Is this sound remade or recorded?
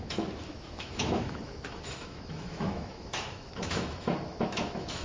remade